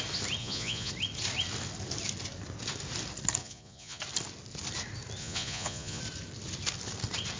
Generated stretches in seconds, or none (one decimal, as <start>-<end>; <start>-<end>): 0.4-0.9; 3.4-4.0; 5.2-6.0